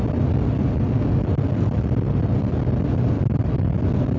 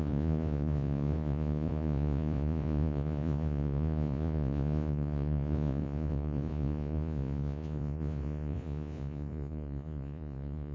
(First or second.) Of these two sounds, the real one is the first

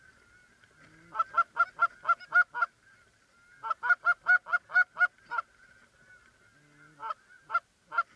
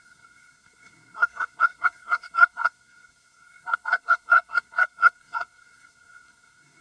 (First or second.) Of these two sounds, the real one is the first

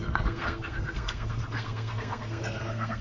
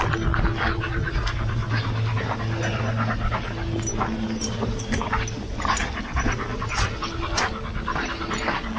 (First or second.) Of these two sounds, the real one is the second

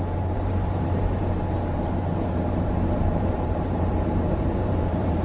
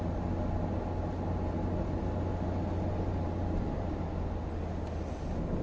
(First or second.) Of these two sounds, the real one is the second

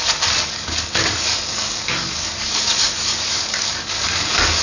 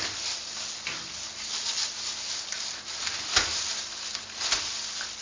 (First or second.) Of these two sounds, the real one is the second